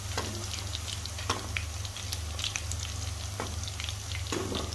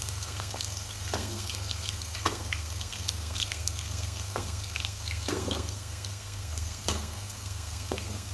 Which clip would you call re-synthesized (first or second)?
second